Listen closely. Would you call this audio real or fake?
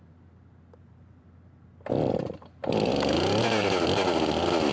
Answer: real